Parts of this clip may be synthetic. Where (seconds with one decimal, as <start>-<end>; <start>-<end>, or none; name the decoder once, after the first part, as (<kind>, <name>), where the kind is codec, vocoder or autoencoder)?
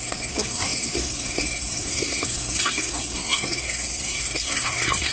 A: 0.0-5.1 (codec, SNAC)